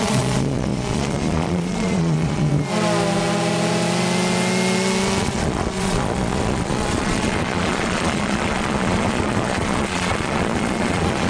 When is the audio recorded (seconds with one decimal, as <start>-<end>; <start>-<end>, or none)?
2.5-5.2